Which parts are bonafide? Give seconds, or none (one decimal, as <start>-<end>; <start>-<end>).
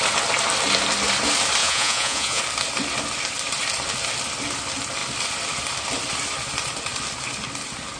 0.0-1.6; 2.4-8.0